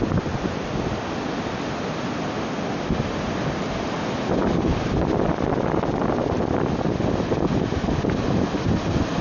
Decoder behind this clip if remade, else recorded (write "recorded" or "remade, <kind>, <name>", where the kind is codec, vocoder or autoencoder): recorded